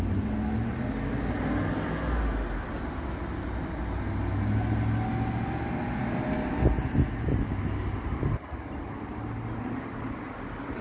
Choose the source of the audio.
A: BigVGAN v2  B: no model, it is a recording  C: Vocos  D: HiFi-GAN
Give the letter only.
B